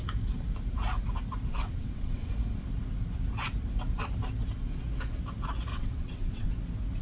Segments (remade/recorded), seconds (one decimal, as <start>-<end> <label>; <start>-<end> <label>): 0.0-1.5 recorded; 1.5-2.3 remade; 2.3-5.7 recorded; 5.7-6.5 remade; 6.5-7.0 recorded

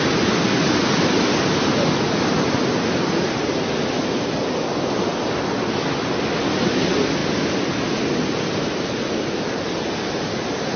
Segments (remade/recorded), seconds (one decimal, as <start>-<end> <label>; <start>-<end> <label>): 0.0-10.8 recorded

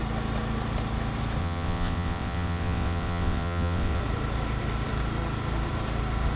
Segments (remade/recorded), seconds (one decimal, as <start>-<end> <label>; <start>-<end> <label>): 0.0-1.4 recorded; 1.4-4.0 remade; 4.0-6.4 recorded

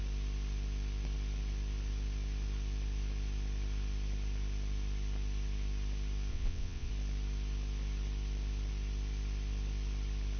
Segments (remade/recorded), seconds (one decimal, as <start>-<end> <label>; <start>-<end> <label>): 0.0-6.3 recorded; 6.3-6.9 remade; 6.9-10.4 recorded

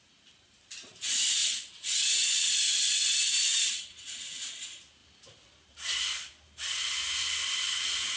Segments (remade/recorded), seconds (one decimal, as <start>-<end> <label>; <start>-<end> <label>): 0.0-1.4 recorded; 1.4-3.0 remade; 3.0-8.2 recorded

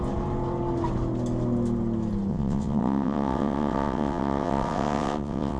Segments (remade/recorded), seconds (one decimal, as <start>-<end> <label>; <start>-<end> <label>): 0.0-2.3 recorded; 2.3-5.6 remade

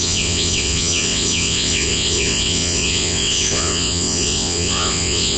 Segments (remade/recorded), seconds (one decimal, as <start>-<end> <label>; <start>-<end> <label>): 0.0-5.4 remade

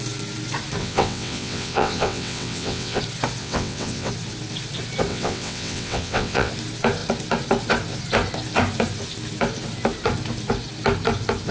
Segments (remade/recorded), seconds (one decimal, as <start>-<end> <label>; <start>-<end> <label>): 0.0-0.8 recorded; 0.8-3.0 remade; 3.0-3.4 recorded; 3.4-4.1 remade; 4.1-5.1 recorded; 5.1-6.5 remade; 6.5-11.5 recorded